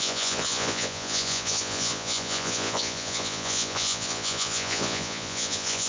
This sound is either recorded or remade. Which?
remade